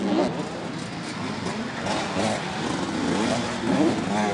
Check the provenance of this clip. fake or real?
real